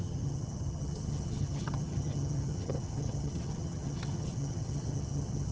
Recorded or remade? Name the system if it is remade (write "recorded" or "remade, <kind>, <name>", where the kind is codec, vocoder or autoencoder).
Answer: remade, vocoder, HiFi-GAN